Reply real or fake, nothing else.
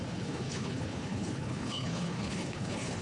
fake